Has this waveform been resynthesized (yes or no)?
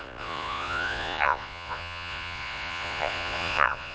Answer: yes